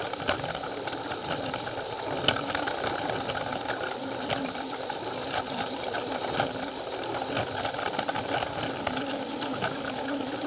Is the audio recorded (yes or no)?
yes